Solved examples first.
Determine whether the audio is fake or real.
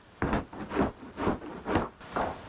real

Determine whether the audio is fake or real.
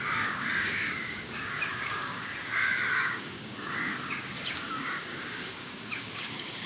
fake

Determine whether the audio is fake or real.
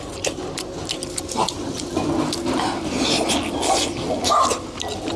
real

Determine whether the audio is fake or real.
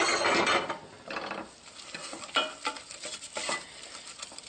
real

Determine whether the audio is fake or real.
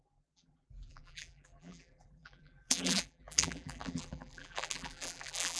fake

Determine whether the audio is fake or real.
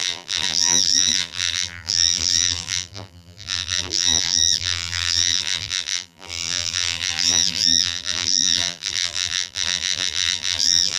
fake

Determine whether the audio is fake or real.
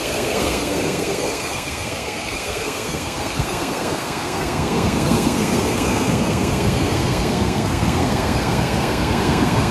fake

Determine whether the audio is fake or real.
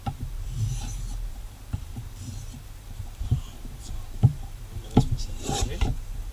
fake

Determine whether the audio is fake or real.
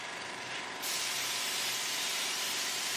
fake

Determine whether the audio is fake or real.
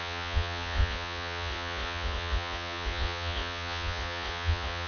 fake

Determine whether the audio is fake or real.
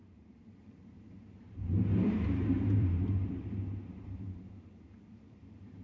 fake